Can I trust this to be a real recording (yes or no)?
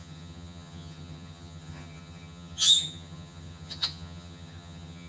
no